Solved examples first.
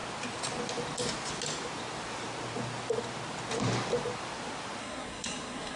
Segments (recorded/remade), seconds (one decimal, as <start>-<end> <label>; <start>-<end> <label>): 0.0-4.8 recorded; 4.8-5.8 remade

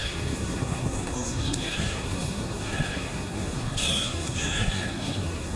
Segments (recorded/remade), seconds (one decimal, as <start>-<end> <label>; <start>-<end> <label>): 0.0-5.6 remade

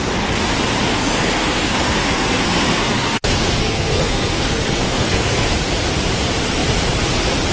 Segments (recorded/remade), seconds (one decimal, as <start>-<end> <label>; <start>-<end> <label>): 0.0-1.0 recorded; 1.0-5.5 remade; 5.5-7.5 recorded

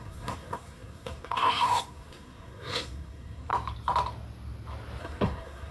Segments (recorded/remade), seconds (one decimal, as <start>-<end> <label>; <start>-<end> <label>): 0.0-3.5 remade; 3.5-5.0 recorded; 5.0-5.7 remade

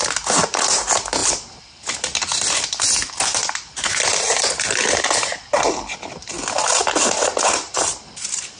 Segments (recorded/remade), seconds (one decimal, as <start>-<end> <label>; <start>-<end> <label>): 0.0-8.6 recorded

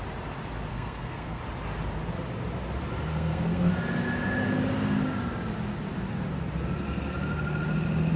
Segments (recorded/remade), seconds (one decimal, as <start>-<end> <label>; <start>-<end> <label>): 0.0-0.7 recorded; 0.7-1.4 remade; 1.4-3.1 recorded; 3.1-3.7 remade; 3.7-8.2 recorded